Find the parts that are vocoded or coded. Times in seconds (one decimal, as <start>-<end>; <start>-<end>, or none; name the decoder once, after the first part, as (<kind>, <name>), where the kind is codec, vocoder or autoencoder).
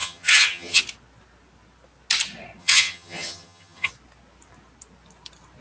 0.0-0.8 (vocoder, HiFi-GAN); 2.6-3.9